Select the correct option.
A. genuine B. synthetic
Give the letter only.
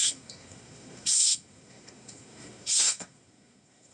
B